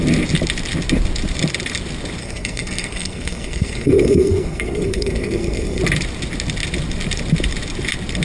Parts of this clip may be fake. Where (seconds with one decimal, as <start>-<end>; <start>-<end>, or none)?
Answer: 2.2-5.8